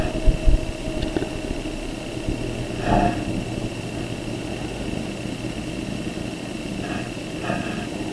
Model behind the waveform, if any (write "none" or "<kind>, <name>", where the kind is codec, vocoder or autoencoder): none